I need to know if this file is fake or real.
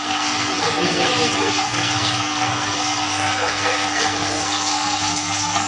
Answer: fake